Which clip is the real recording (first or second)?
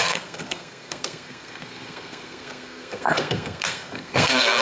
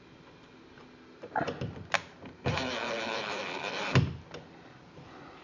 second